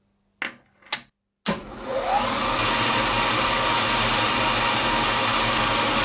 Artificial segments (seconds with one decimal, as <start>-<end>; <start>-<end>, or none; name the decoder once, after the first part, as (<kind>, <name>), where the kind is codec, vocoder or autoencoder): none